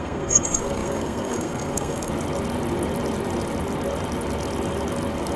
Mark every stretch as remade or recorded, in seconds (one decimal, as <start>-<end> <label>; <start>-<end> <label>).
0.0-2.1 remade; 2.1-5.4 recorded